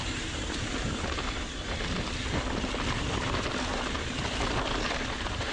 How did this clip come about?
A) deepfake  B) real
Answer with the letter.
B